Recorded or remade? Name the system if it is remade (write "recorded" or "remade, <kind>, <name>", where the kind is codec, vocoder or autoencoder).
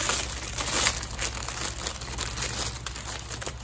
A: recorded